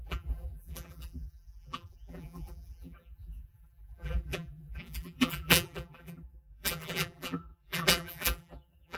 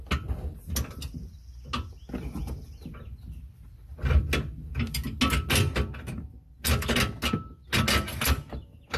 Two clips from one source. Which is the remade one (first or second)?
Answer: first